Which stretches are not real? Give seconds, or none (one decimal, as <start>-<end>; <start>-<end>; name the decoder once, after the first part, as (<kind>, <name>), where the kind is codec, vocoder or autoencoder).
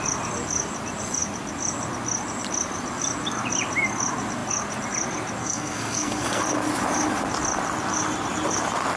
5.4-6.4 (codec, SNAC)